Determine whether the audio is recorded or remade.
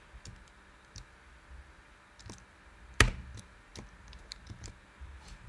recorded